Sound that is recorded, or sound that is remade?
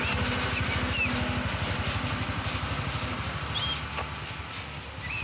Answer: recorded